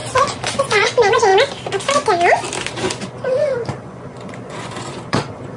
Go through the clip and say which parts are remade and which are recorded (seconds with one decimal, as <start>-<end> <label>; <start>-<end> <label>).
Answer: 0.0-0.6 recorded; 0.6-1.3 remade; 1.3-2.7 recorded; 2.7-5.6 remade